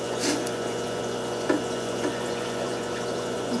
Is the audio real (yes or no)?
no